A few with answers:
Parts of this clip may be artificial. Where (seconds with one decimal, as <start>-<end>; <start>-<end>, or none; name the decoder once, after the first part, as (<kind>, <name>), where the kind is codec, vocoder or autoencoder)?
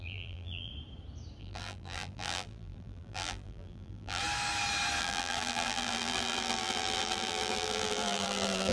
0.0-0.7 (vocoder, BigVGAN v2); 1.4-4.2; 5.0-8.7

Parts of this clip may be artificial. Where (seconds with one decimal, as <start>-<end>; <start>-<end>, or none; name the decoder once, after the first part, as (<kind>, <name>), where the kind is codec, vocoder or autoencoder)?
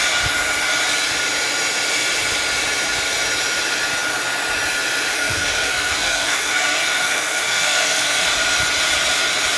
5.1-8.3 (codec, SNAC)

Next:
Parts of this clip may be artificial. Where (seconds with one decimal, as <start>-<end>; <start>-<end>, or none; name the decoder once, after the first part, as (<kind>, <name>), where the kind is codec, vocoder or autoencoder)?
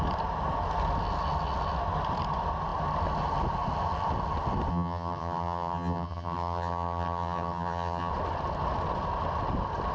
4.7-8.1 (vocoder, HiFi-GAN)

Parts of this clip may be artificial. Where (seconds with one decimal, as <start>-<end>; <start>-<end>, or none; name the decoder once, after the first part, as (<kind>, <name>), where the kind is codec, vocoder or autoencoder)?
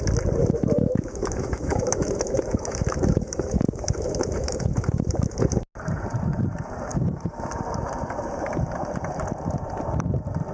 0.4-5.4 (autoencoder, DAC-VAE); 6.9-7.5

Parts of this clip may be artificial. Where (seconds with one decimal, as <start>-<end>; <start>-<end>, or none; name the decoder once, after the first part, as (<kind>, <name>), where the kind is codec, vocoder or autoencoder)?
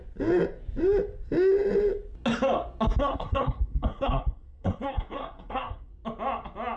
3.0-5.9 (codec, SNAC)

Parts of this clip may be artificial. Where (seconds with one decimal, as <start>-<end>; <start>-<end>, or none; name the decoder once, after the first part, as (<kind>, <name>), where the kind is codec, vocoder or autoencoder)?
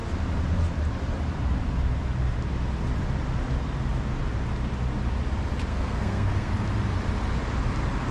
5.7-6.5 (codec, SNAC)